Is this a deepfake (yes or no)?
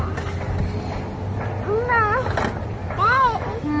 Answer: no